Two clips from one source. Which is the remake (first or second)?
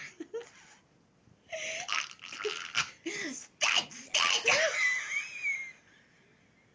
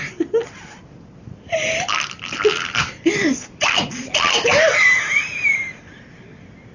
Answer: second